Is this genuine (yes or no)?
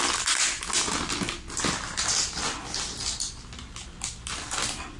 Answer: yes